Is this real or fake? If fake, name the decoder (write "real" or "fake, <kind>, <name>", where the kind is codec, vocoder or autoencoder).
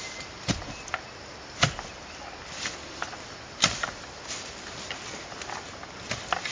real